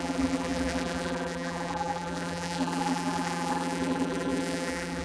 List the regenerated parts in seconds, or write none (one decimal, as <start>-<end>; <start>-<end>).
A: 0.0-5.0